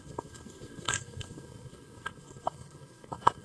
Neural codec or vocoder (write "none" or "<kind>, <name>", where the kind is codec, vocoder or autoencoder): codec, SNAC